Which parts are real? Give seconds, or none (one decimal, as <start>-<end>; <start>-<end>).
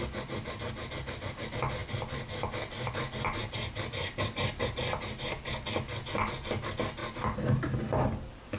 0.0-3.4; 4.5-7.0; 7.7-8.6